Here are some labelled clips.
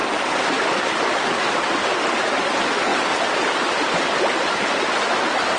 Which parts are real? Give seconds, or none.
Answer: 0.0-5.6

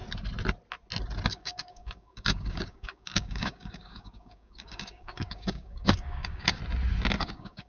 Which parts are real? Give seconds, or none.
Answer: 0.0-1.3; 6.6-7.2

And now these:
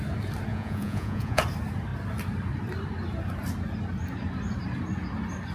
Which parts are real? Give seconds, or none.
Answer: 0.0-0.5; 1.4-5.5

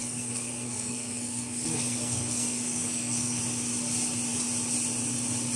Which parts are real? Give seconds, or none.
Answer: 3.4-5.6

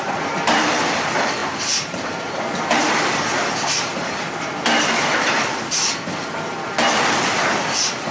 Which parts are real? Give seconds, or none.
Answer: none

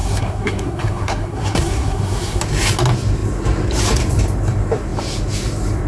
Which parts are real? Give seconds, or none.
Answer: 2.4-5.9